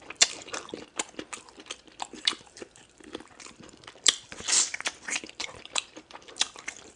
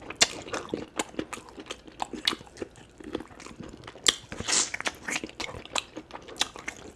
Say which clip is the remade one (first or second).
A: first